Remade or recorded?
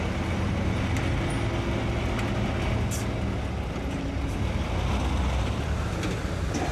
recorded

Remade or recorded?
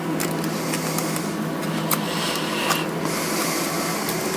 recorded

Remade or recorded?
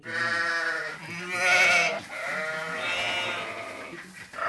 recorded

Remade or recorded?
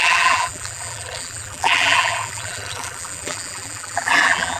remade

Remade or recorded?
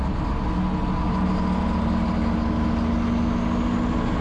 recorded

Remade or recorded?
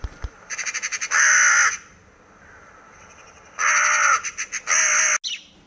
recorded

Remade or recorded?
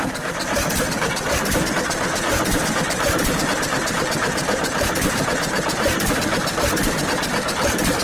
remade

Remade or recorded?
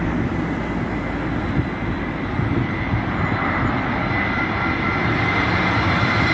remade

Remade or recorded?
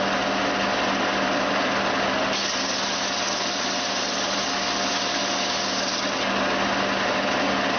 recorded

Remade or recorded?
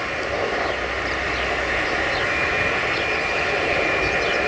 recorded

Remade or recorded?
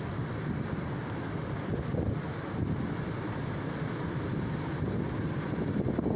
recorded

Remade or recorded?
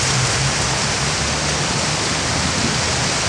remade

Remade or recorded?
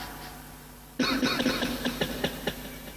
remade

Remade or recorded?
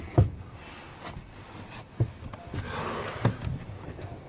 recorded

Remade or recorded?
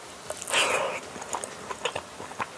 recorded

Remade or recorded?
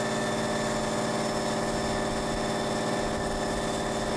recorded